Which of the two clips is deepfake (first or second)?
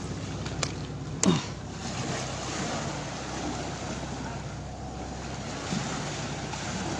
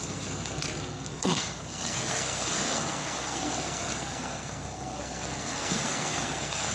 second